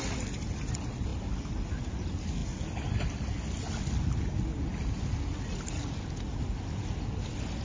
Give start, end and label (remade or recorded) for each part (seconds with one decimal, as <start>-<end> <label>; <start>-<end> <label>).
0.0-7.6 recorded

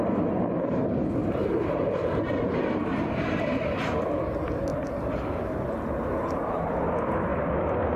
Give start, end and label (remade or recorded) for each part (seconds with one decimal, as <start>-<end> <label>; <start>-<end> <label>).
0.0-1.2 recorded; 1.2-3.7 remade; 3.7-7.3 recorded; 7.3-8.0 remade

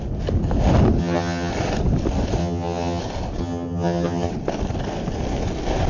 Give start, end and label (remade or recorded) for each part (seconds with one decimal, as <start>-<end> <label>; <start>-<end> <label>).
0.0-1.0 recorded; 1.0-1.5 remade; 1.5-2.4 recorded; 2.4-3.0 remade; 3.0-3.4 recorded; 3.4-4.3 remade; 4.3-5.9 recorded

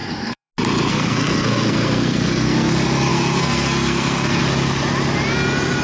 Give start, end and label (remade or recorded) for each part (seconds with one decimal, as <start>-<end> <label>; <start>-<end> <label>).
0.0-0.5 remade; 0.5-0.9 recorded; 0.9-2.7 remade; 2.7-3.1 recorded; 3.1-4.4 remade; 4.4-5.8 recorded

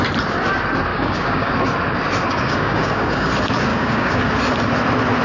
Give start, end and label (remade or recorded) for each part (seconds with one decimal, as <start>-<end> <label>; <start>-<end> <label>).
0.0-0.9 recorded; 0.9-1.5 remade; 1.5-2.3 recorded; 2.3-3.3 remade; 3.3-3.7 recorded; 3.7-4.2 remade; 4.2-5.2 recorded